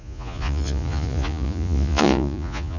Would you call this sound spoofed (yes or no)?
yes